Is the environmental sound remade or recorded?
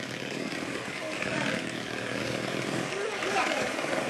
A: remade